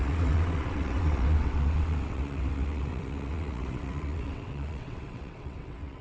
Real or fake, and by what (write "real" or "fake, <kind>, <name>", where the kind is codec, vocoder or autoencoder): fake, vocoder, WaveNeXt